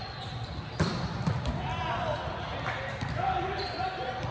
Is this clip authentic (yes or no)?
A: yes